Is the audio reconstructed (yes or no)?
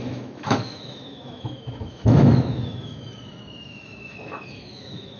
yes